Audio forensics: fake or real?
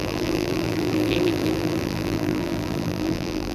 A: fake